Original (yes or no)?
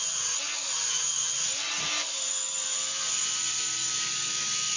yes